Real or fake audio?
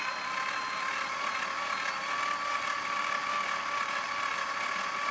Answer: real